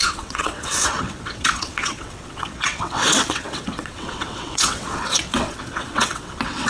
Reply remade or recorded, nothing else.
remade